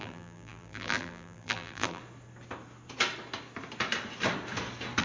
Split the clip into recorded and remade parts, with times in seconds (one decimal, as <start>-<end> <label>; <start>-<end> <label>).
0.0-2.0 remade; 2.0-5.0 recorded